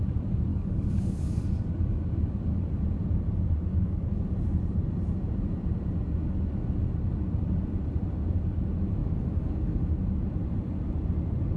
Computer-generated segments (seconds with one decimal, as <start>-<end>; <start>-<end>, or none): 0.5-1.4; 3.7-4.2; 9.0-9.9